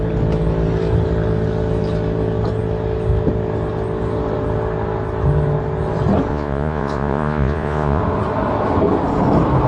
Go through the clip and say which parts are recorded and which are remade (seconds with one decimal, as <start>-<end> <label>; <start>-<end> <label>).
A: 0.0-6.3 recorded; 6.3-8.0 remade; 8.0-9.7 recorded